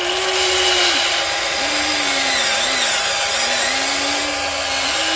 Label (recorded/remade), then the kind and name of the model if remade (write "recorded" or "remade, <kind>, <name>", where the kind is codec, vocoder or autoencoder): recorded